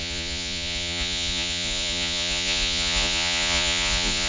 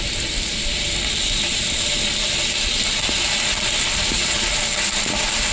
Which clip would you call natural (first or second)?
second